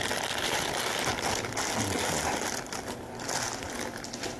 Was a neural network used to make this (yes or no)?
no